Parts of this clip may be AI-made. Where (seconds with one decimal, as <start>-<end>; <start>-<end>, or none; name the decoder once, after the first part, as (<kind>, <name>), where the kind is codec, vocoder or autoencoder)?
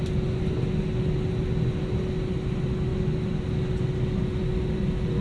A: none